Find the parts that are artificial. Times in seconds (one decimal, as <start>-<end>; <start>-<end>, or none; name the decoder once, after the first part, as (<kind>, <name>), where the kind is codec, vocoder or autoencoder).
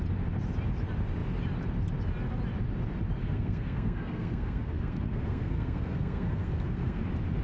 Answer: 3.2-7.0 (codec, SNAC)